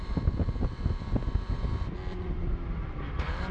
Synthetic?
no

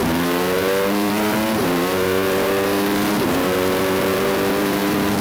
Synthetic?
yes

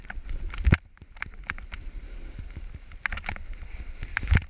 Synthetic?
no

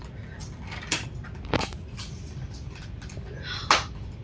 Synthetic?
no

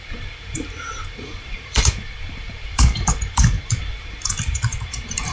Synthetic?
yes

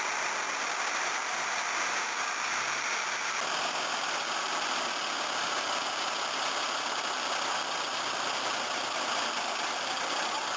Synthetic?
no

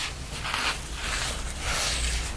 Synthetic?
no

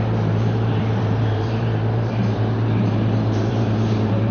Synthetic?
yes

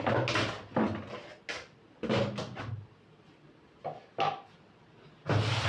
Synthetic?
no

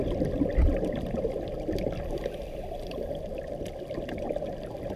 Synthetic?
no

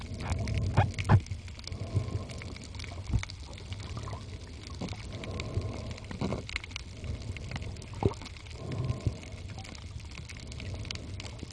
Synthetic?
no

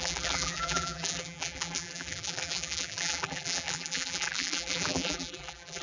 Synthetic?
yes